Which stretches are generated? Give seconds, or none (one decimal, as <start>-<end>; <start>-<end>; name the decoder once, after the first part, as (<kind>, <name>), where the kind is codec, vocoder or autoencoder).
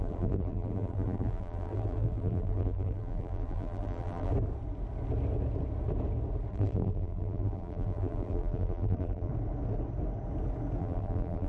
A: 0.0-4.3 (vocoder, BigVGAN v2); 6.5-9.3; 10.8-11.5